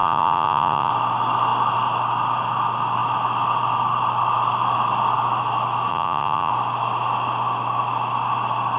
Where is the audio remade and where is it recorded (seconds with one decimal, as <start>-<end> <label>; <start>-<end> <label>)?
0.0-0.9 remade; 0.9-5.9 recorded; 5.9-6.5 remade; 6.5-8.8 recorded